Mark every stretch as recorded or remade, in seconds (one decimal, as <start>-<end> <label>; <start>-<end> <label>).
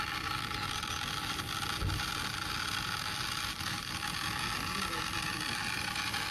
0.0-3.5 recorded; 3.5-4.0 remade; 4.0-6.3 recorded